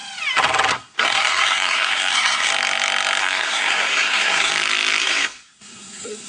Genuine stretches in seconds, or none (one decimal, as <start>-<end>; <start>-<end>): 0.0-0.7; 2.5-3.2; 4.5-5.0